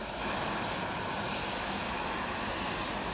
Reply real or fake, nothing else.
real